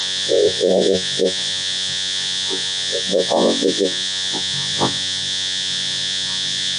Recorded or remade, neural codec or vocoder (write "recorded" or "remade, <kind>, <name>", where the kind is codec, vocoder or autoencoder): remade, vocoder, Vocos